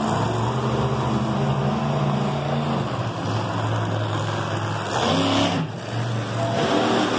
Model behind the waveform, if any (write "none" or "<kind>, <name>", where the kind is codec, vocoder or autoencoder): none